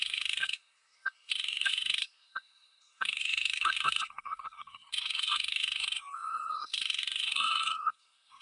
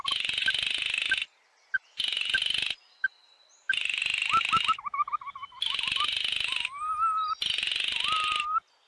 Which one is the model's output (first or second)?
first